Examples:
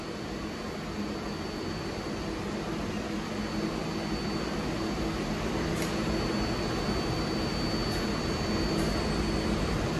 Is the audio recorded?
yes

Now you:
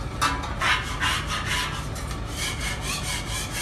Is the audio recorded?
yes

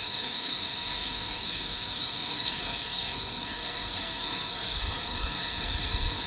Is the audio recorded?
no